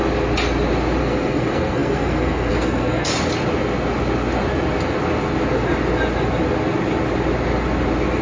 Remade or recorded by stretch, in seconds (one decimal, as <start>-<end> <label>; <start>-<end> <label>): 0.0-1.0 recorded; 1.0-3.1 remade; 3.1-8.2 recorded